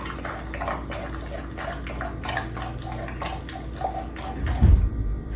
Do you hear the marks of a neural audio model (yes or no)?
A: no